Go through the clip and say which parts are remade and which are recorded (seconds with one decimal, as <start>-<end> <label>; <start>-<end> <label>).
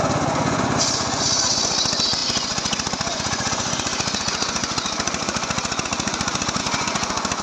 0.0-7.4 remade